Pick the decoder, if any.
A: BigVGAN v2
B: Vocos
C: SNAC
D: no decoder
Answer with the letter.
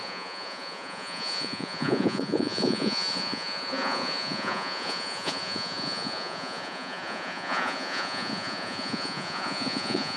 B